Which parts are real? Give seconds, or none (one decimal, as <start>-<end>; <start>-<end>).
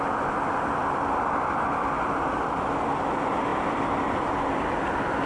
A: 0.0-5.3